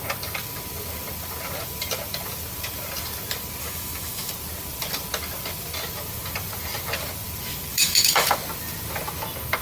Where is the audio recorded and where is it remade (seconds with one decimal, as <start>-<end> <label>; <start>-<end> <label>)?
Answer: 0.0-3.6 recorded; 3.6-4.3 remade; 4.3-7.7 recorded; 7.7-8.3 remade; 8.3-9.6 recorded